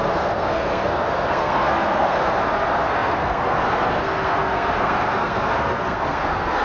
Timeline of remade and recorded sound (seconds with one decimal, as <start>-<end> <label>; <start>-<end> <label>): 0.0-6.6 remade